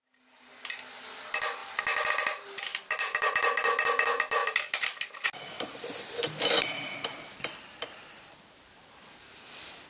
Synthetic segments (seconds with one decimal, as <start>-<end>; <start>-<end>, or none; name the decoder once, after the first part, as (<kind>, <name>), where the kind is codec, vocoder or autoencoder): 1.6-2.1 (vocoder, BigVGAN v2); 2.7-3.3; 4.4-8.6